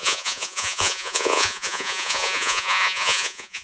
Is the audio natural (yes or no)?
no